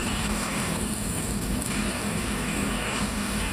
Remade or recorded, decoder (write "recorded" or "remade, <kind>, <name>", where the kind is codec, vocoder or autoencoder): remade, codec, DAC